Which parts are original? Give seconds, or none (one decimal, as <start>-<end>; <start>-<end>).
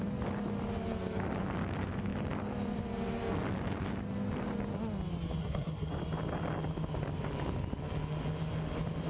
0.0-5.4; 5.9-9.1